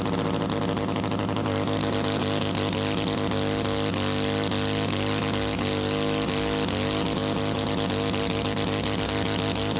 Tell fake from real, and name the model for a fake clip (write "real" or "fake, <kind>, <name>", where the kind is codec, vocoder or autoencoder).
real